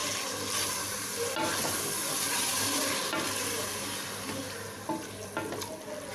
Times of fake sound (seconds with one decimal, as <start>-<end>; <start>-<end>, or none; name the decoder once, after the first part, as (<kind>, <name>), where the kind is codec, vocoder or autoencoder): none